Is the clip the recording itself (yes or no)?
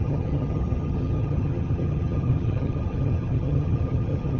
no